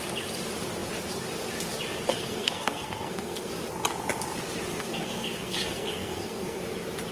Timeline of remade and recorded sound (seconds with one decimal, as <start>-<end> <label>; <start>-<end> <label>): 0.0-2.1 recorded; 2.1-3.5 remade; 3.5-4.7 recorded; 4.7-6.6 remade; 6.6-7.1 recorded